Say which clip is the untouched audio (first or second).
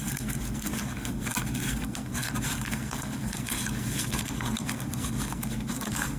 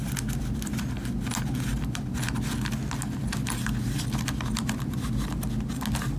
second